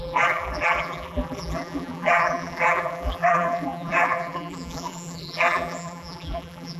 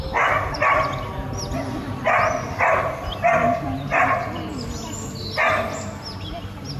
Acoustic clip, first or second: second